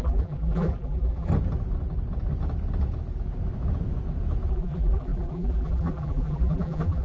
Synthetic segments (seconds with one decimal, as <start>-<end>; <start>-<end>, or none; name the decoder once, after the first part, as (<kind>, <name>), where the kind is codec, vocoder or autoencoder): 0.0-1.3 (vocoder, BigVGAN v2); 4.5-7.0